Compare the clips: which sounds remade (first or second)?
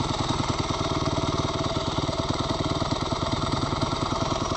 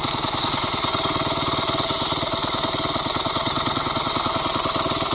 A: first